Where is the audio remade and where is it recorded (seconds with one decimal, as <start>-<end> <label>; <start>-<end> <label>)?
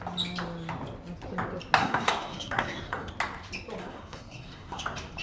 0.0-1.8 recorded; 1.8-3.1 remade; 3.1-3.8 recorded; 3.8-4.8 remade; 4.8-5.2 recorded